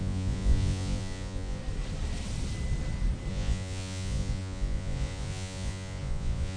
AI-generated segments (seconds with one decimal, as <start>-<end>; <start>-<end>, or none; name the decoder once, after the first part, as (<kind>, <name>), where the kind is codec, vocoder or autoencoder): 0.0-1.6 (vocoder, Vocos); 3.3-6.6